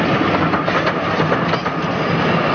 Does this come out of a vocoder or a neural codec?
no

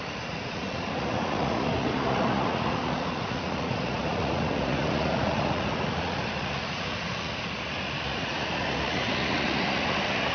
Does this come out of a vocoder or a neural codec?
yes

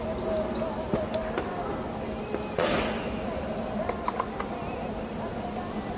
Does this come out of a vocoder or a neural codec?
no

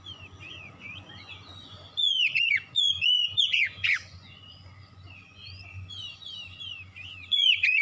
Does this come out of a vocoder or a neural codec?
yes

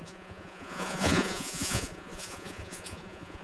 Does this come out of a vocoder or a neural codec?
yes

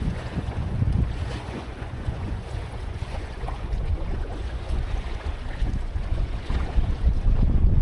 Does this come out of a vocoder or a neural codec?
yes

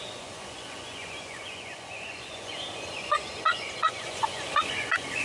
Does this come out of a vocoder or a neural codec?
yes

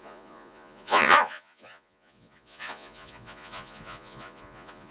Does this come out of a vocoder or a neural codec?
yes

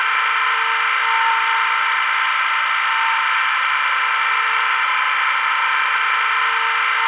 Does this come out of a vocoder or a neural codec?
no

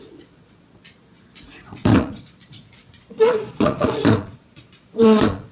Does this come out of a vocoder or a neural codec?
yes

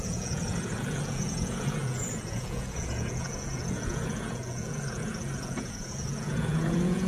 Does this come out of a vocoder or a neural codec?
yes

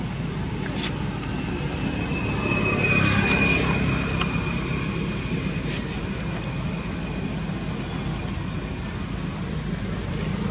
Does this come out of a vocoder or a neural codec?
no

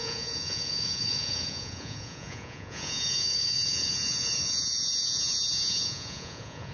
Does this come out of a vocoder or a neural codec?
yes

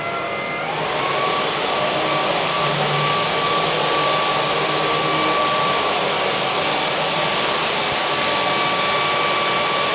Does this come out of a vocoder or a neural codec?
no